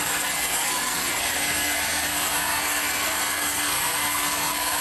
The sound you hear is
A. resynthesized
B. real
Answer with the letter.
A